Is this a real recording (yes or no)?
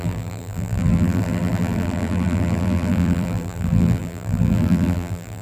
no